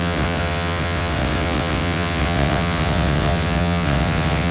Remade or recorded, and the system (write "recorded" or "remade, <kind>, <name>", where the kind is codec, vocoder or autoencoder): remade, vocoder, WaveNeXt